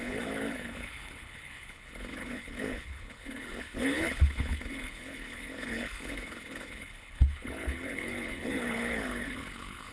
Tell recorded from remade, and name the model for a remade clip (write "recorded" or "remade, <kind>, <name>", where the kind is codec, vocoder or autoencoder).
remade, codec, HILCodec